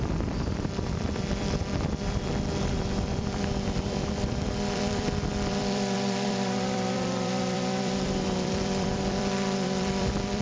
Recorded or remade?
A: remade